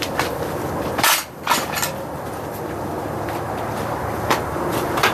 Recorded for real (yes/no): no